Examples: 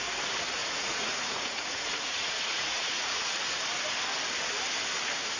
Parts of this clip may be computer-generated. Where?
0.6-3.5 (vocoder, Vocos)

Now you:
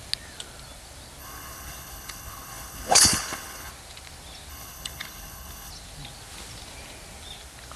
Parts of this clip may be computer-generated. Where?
1.2-3.7 (codec, HILCodec); 4.5-5.7

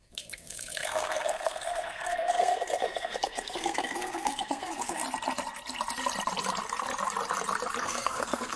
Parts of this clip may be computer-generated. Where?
0.0-5.0 (codec, SNAC); 7.8-8.6

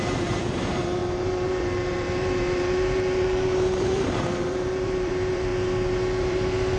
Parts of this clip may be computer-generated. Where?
0.0-5.5 (vocoder, BigVGAN v2); 6.2-6.8